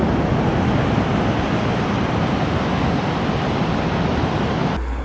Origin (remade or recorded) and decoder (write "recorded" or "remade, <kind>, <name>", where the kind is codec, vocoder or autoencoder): recorded